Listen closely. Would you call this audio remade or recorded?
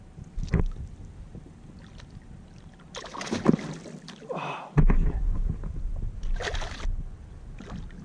recorded